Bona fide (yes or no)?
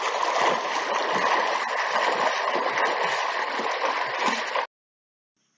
yes